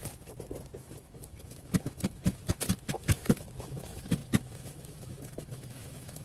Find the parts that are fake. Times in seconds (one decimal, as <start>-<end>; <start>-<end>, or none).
0.8-2.4; 2.9-6.2